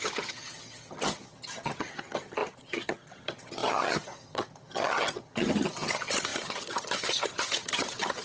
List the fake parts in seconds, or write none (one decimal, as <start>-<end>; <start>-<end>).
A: 0.0-8.2